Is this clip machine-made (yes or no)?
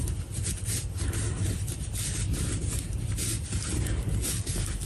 no